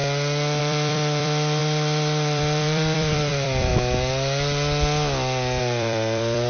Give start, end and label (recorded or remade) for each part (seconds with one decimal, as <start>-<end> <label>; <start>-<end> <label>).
0.0-0.6 recorded; 0.6-3.7 remade; 3.7-5.6 recorded; 5.6-6.5 remade